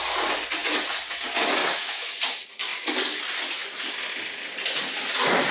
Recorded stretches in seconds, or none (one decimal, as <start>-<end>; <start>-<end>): 0.0-1.6; 2.1-5.5